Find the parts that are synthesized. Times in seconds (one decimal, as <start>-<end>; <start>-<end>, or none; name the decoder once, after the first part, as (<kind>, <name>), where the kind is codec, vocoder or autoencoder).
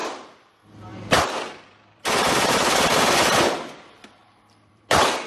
0.0-0.5 (vocoder, BigVGAN v2); 0.9-2.3; 4.2-5.3